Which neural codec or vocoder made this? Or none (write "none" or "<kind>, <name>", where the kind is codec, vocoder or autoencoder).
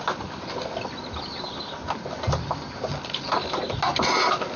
none